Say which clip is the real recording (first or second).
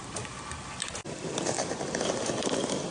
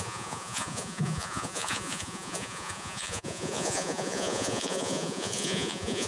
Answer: first